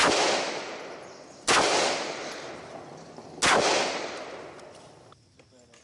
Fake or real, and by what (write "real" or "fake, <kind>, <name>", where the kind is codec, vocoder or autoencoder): real